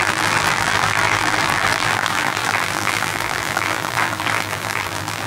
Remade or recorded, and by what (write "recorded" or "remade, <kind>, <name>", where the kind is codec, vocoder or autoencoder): remade, vocoder, BigVGAN v2